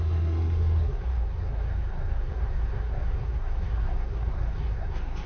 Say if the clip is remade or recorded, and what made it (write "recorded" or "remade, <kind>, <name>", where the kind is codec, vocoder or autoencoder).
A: remade, codec, SNAC